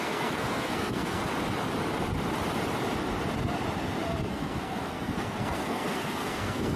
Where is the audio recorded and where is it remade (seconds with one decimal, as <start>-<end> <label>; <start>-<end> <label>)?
0.0-1.2 remade; 1.2-4.2 recorded; 4.2-6.8 remade